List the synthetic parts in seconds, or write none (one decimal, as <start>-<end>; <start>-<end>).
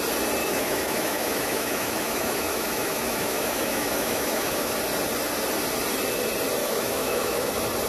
0.4-4.8; 6.6-7.5